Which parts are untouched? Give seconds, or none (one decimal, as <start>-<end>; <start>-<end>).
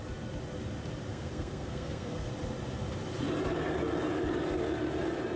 0.0-1.1; 2.3-5.4